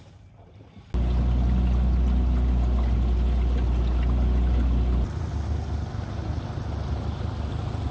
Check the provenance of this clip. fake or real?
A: real